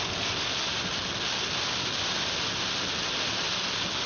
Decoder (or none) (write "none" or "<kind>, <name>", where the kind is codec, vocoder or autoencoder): none